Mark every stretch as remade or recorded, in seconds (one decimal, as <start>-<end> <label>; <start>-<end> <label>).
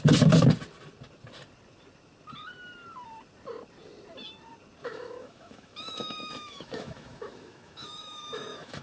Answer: 0.0-4.8 recorded; 4.8-8.8 remade